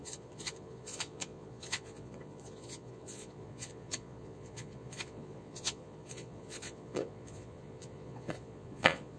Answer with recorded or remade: remade